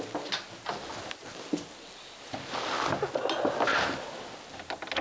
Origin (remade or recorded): recorded